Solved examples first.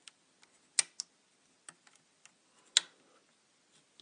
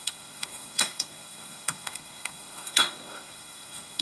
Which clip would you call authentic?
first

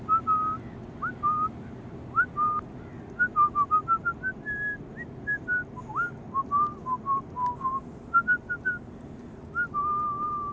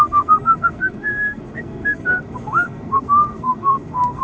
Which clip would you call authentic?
first